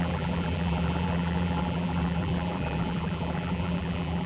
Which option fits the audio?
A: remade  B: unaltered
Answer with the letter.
A